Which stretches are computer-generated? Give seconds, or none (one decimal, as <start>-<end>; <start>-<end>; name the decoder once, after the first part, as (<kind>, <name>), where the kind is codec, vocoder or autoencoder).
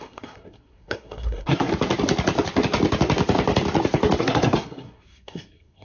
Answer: 0.0-1.7 (codec, SNAC); 4.2-5.8